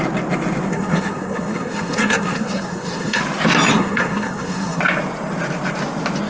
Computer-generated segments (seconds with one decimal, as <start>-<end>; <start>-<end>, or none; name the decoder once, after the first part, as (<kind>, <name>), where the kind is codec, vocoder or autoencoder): 0.7-3.2 (codec, SNAC); 3.7-4.8